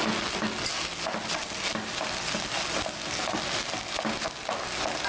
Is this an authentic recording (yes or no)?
yes